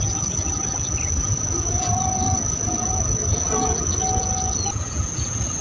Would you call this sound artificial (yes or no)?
yes